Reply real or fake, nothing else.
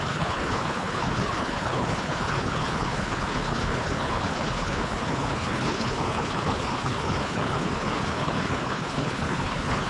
fake